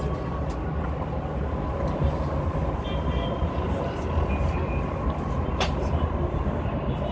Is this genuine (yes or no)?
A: yes